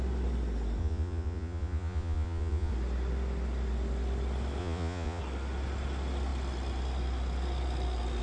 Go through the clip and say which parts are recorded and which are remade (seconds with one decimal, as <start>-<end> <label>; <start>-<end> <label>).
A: 0.0-0.8 recorded; 0.8-2.7 remade; 2.7-4.6 recorded; 4.6-5.2 remade; 5.2-8.2 recorded